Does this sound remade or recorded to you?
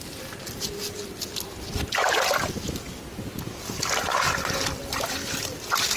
recorded